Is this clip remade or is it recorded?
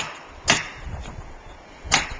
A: recorded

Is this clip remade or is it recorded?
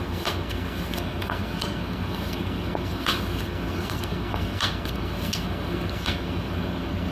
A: remade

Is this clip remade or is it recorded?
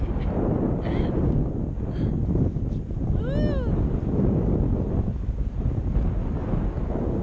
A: recorded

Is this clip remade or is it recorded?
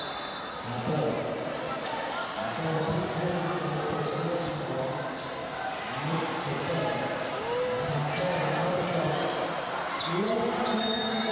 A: recorded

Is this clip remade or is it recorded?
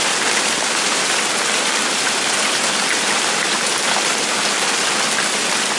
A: recorded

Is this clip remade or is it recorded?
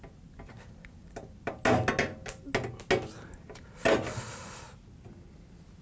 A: recorded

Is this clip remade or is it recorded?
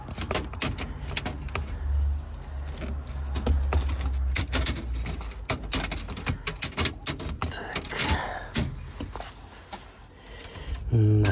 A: recorded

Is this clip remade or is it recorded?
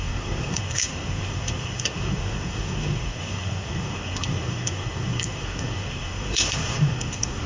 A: remade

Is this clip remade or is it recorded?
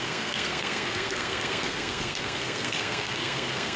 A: remade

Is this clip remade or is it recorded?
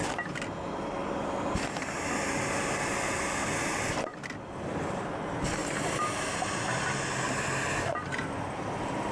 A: recorded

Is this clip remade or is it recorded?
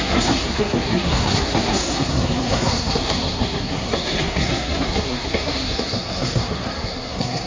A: remade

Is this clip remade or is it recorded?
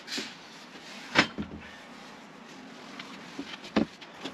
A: recorded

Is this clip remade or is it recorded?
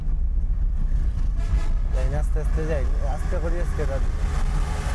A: recorded